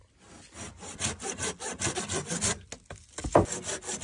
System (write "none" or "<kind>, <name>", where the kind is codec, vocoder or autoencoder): none